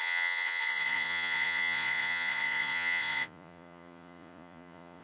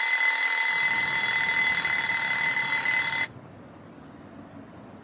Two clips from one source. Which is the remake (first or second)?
first